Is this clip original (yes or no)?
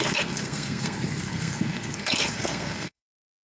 no